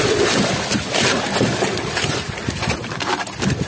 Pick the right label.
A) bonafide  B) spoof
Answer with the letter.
A